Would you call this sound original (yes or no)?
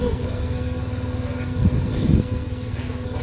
no